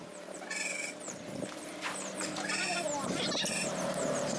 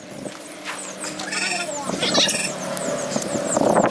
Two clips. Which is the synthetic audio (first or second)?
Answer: first